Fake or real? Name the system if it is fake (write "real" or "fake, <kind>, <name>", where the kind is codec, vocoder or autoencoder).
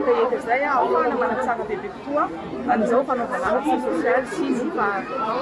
real